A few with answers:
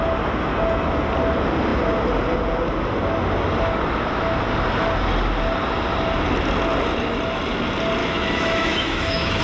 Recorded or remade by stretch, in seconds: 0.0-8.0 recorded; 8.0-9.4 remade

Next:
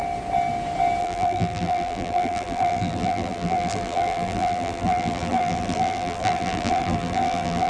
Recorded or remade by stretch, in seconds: 0.0-1.0 recorded; 1.0-7.7 remade

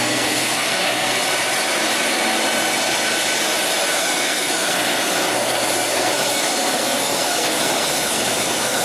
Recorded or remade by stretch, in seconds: 0.0-1.2 remade; 1.2-3.9 recorded; 3.9-8.8 remade

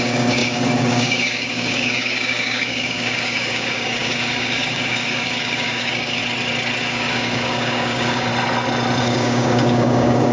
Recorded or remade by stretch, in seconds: 0.0-6.2 remade; 6.2-6.8 recorded; 6.8-8.3 remade; 8.3-9.0 recorded; 9.0-10.3 remade